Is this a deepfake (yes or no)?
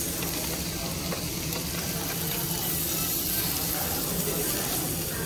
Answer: no